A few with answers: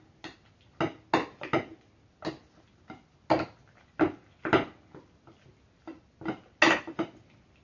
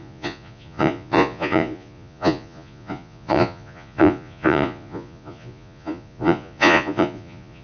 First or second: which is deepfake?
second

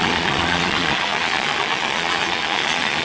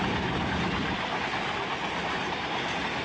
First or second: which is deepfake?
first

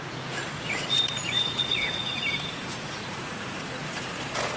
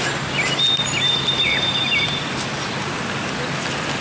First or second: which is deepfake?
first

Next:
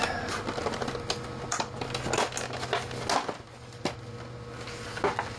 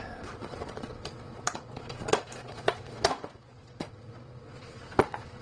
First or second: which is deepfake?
second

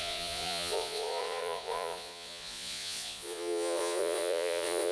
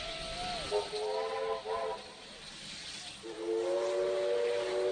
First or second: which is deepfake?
first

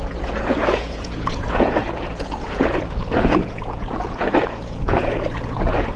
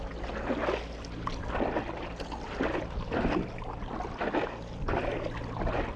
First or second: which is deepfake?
first